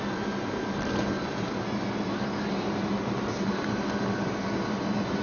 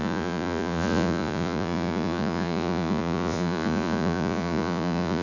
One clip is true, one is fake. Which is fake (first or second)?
second